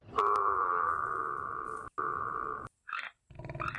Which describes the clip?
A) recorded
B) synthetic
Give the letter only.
A